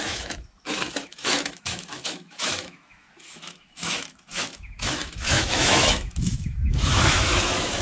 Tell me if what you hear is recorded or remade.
remade